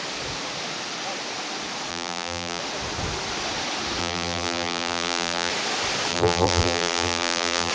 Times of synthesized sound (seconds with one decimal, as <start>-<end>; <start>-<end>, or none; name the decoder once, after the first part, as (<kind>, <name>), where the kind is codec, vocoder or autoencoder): 1.9-2.6 (vocoder, BigVGAN v2); 4.0-5.5; 6.1-7.7